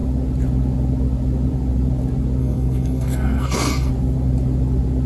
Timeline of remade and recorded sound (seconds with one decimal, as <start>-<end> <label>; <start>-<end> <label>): 0.0-2.4 recorded; 2.4-3.9 remade; 3.9-5.1 recorded